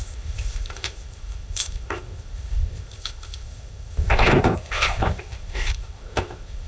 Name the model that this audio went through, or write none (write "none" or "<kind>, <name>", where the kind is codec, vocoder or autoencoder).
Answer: codec, ZipCodec